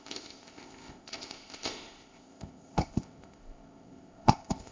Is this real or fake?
fake